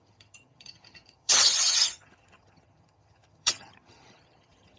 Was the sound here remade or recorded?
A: remade